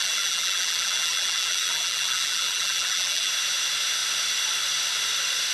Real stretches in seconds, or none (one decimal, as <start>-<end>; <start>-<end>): 3.3-5.5